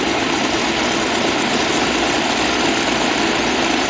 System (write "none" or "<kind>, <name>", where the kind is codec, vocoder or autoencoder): none